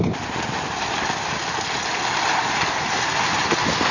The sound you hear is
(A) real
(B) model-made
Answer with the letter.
A